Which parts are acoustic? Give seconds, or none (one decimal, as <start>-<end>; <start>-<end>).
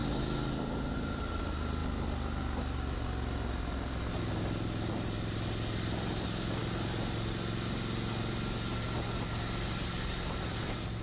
0.0-11.0